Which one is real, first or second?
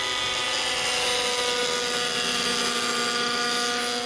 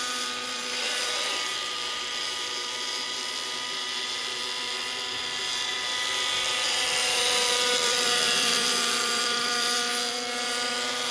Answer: first